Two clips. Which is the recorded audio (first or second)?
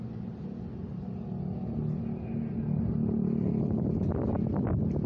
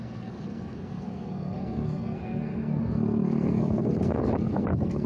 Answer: first